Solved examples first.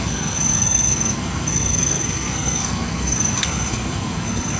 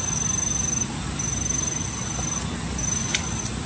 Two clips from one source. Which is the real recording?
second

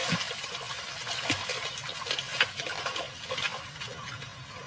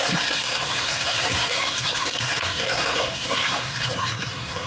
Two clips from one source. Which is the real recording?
first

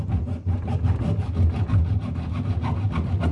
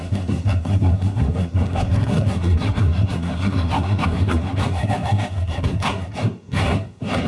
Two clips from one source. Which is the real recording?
first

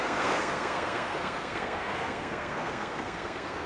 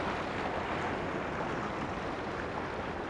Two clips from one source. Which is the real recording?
second